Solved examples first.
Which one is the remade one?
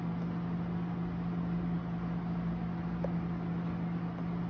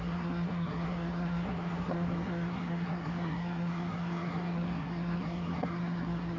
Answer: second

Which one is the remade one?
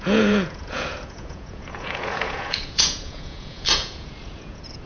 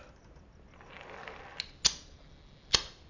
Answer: first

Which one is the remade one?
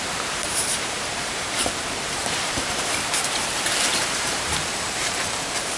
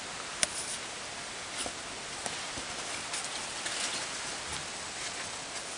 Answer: first